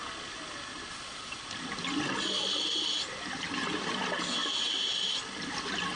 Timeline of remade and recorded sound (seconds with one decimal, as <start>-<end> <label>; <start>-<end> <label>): 0.0-6.0 recorded